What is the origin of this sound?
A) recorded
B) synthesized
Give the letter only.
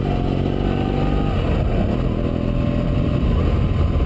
A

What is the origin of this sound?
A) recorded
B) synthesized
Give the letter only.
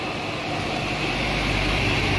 B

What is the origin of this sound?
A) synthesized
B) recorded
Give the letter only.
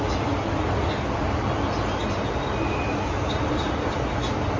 B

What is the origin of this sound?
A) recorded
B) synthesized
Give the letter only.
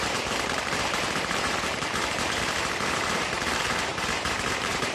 B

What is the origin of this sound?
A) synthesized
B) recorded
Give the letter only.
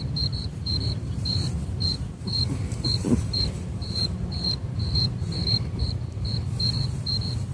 A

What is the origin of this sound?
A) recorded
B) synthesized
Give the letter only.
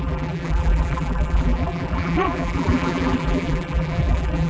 B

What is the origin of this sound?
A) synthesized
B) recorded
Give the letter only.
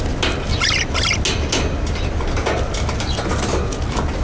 B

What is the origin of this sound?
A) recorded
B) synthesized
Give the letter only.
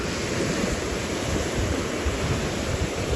B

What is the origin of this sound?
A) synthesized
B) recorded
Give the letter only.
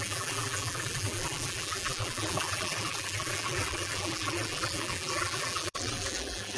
A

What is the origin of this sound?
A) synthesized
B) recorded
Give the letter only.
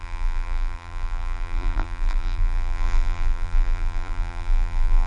A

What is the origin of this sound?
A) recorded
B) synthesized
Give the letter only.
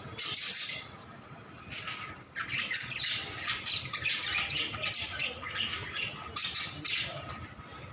B